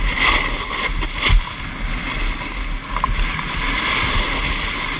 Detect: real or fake real